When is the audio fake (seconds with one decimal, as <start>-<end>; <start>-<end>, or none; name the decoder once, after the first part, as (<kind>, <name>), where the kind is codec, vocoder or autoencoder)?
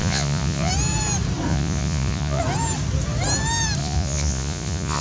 0.0-0.7 (vocoder, Vocos); 1.5-2.4; 3.8-5.0